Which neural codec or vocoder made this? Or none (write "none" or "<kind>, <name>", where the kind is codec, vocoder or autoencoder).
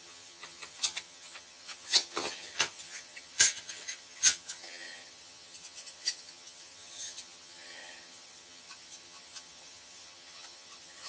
vocoder, HiFi-GAN